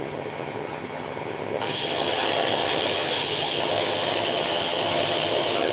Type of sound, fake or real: fake